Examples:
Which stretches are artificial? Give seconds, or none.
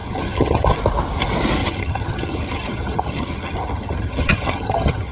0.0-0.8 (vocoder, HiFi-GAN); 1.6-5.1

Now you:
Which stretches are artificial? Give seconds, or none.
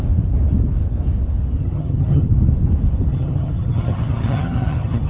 1.6-2.3 (vocoder, HiFi-GAN); 3.1-5.1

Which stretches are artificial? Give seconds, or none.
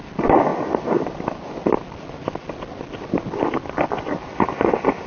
none